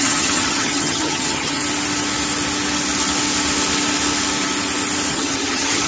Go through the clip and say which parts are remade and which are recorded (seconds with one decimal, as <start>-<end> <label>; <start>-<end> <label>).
0.0-1.6 remade; 1.6-5.1 recorded; 5.1-5.9 remade